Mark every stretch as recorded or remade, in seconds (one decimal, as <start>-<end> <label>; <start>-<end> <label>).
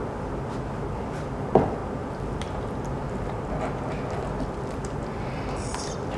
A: 0.0-6.2 recorded